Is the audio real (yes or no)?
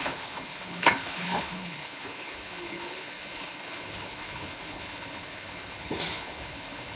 no